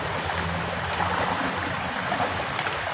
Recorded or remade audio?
recorded